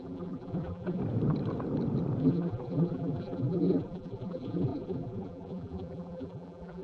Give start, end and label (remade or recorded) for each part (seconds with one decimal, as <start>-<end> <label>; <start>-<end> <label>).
0.0-1.0 remade; 1.0-2.2 recorded; 2.2-6.8 remade